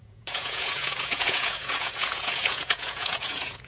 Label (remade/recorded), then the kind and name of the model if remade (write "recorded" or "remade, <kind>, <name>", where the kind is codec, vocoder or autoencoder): remade, vocoder, Vocos